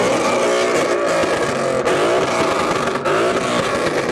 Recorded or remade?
recorded